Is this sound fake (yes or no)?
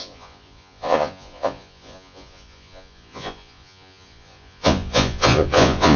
yes